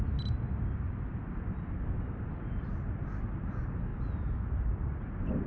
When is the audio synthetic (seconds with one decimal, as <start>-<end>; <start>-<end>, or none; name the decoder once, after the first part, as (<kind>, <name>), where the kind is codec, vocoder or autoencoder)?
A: none